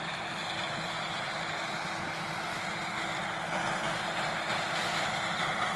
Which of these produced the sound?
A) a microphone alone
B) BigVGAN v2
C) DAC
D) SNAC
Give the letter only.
A